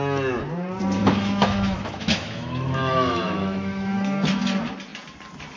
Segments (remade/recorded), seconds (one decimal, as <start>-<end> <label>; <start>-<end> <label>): 0.0-1.0 recorded; 1.0-4.4 remade; 4.4-5.6 recorded